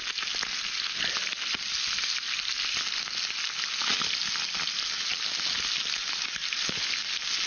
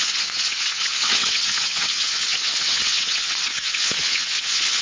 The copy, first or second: second